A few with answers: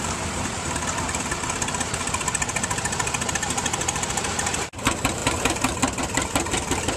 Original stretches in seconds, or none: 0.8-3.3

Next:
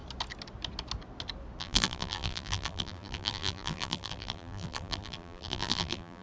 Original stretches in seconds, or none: 0.0-1.6